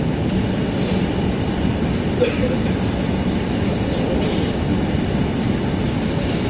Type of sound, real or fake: real